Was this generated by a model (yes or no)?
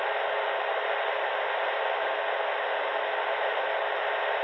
no